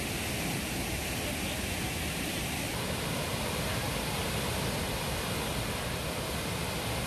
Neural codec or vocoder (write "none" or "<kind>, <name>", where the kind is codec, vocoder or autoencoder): none